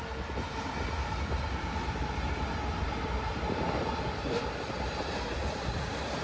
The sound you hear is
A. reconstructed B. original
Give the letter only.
B